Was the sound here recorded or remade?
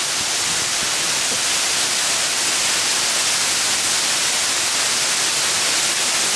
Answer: recorded